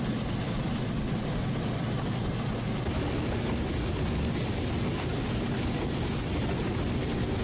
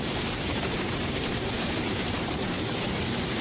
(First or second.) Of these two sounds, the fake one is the second